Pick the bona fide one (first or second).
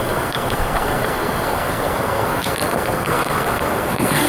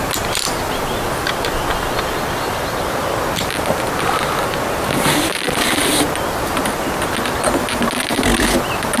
second